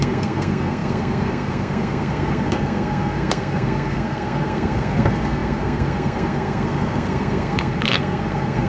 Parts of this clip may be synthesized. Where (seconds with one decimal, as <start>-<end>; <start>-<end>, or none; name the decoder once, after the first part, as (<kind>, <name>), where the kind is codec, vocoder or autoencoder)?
0.0-8.7 (codec, SNAC)

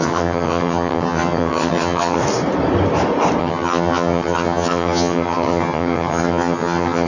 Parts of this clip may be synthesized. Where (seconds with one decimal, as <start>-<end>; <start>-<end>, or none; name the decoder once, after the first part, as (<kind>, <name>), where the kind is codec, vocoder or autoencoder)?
0.0-2.2 (vocoder, HiFi-GAN); 3.4-7.1

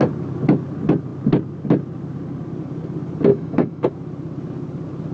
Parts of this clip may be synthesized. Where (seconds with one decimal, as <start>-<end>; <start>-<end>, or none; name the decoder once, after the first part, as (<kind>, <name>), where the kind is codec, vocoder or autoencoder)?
3.3-3.9 (autoencoder, DAC-VAE)

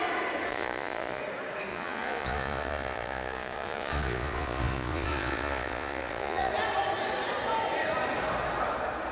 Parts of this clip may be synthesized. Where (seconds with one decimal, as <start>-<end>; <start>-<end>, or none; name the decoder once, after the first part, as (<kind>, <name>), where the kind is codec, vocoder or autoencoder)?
0.5-1.2 (vocoder, Vocos); 1.7-6.5